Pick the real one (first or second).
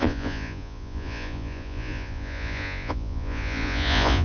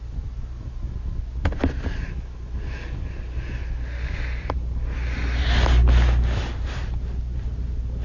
second